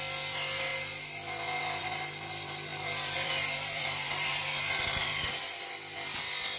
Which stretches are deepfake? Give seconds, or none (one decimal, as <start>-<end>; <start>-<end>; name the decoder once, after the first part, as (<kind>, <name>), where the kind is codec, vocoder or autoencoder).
2.7-5.7 (vocoder, BigVGAN v2)